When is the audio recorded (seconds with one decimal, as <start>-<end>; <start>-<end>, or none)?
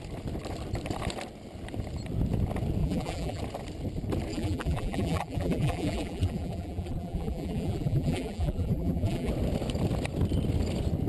0.0-2.8; 3.4-4.3; 9.3-11.1